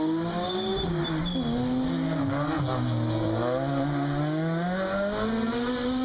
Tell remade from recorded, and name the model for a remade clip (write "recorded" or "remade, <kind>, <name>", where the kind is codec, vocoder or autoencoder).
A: recorded